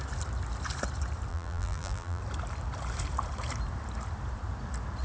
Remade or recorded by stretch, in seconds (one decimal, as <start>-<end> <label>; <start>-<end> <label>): 0.0-1.3 recorded; 1.3-2.2 remade; 2.2-5.0 recorded